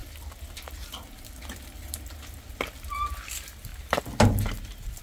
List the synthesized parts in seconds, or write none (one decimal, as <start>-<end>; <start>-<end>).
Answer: none